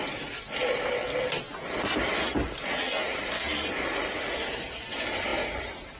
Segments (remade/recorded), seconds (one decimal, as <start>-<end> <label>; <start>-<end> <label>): 0.0-6.0 recorded